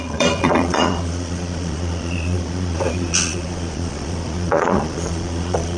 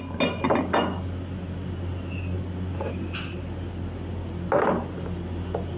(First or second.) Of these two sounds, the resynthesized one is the first